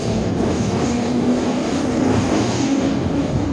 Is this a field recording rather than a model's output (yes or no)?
no